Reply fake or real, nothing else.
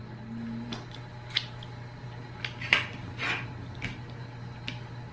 real